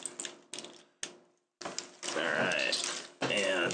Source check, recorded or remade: recorded